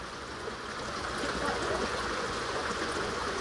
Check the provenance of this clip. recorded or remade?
remade